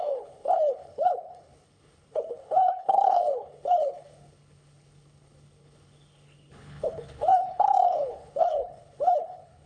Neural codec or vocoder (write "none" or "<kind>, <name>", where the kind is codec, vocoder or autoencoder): codec, HILCodec